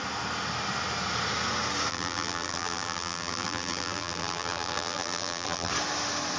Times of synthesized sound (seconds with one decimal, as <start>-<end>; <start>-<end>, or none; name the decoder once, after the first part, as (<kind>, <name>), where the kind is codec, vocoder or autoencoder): 1.9-5.7 (vocoder, BigVGAN v2)